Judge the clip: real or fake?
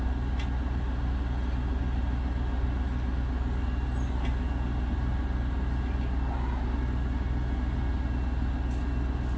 real